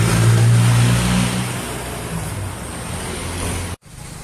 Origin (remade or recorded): recorded